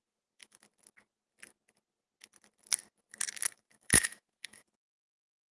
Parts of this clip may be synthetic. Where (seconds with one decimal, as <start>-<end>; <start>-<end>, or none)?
0.0-0.7; 3.5-5.5